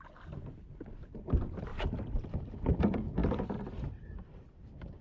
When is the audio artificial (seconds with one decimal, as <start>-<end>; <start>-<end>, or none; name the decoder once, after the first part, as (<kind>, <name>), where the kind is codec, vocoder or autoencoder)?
1.7-2.8 (vocoder, BigVGAN v2)

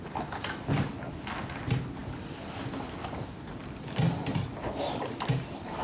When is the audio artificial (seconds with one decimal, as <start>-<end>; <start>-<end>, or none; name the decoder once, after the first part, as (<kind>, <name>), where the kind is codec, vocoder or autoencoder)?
none

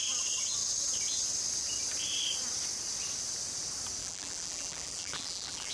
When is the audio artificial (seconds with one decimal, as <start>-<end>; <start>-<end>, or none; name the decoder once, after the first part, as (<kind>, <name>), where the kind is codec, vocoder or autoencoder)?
4.0-5.7 (vocoder, BigVGAN v2)

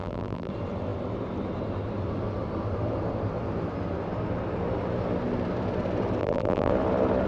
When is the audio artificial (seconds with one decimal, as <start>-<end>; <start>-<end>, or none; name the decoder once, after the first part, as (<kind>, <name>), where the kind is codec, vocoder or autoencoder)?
0.0-0.5 (vocoder, BigVGAN v2); 6.2-6.7

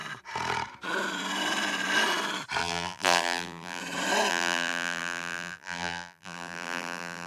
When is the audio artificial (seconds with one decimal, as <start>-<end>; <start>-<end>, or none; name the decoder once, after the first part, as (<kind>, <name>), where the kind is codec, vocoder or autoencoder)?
2.6-3.8 (vocoder, BigVGAN v2); 4.3-7.3

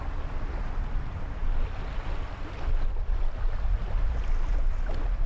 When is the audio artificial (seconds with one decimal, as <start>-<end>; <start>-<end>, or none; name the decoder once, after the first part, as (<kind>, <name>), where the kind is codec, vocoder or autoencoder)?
none